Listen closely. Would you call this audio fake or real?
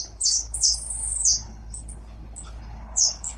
fake